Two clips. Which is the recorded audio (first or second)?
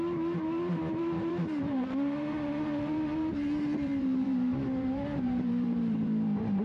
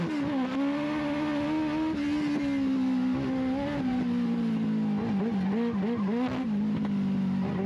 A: second